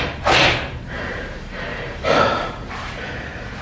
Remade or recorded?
remade